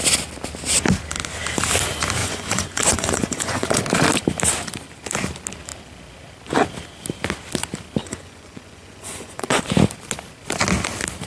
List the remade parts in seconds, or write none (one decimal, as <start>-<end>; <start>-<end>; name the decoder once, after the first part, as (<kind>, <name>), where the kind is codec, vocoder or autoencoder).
2.2-3.8 (vocoder, Vocos); 8.0-9.6